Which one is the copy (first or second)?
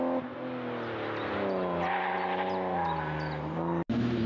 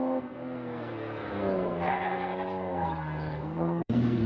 second